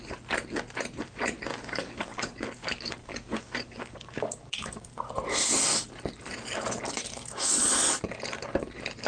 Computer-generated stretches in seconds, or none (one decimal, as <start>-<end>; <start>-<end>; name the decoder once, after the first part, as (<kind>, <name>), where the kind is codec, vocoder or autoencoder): 1.5-4.8 (codec, DAC)